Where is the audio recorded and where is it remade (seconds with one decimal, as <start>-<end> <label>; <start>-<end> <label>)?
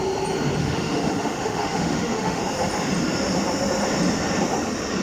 0.0-0.6 recorded; 0.6-2.4 remade; 2.4-5.0 recorded